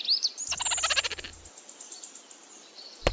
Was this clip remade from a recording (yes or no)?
no